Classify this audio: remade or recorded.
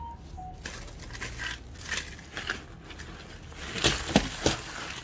recorded